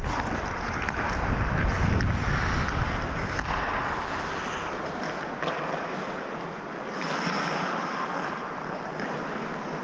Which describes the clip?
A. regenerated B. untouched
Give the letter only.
B